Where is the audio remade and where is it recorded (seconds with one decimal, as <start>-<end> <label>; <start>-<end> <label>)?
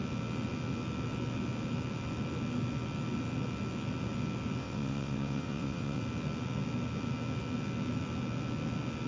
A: 0.0-4.6 recorded; 4.6-6.0 remade; 6.0-9.1 recorded